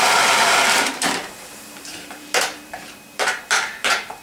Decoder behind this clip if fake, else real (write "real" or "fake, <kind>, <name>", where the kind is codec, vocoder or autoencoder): fake, vocoder, BigVGAN v2